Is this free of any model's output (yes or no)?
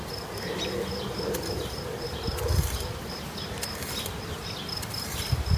yes